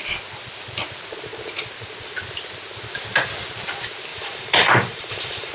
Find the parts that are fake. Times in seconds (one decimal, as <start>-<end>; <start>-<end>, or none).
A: 4.1-5.5